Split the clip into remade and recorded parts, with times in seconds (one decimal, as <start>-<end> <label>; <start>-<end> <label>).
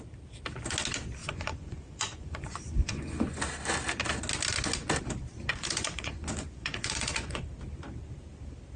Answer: 0.0-1.2 recorded; 1.2-3.4 remade; 3.4-5.5 recorded; 5.5-7.4 remade; 7.4-8.8 recorded